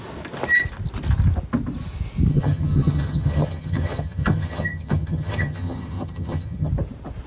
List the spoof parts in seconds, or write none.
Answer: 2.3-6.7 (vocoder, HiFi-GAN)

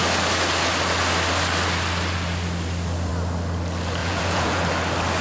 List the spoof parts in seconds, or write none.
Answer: 4.0-4.6 (vocoder, Vocos)